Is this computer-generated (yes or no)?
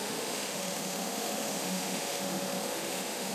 yes